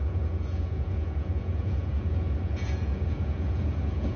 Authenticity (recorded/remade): remade